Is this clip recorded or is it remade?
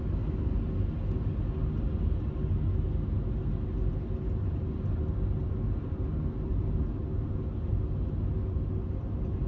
recorded